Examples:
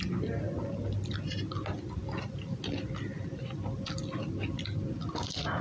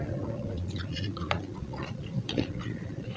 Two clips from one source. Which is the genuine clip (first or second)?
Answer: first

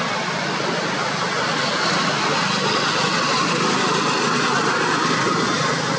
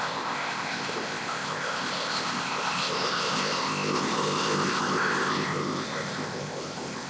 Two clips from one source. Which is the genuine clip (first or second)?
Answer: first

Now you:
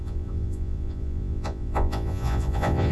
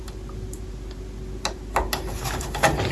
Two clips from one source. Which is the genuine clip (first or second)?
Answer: second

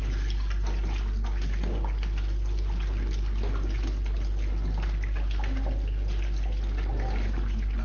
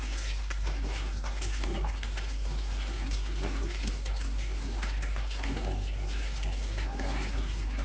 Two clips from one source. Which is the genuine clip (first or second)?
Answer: first